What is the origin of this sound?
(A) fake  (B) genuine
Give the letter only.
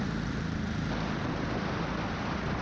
B